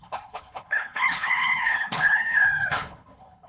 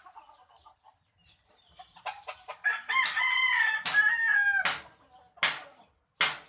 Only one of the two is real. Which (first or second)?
second